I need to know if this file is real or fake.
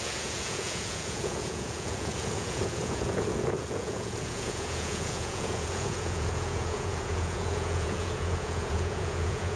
fake